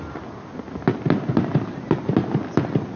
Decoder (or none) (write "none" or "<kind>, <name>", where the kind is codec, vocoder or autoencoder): none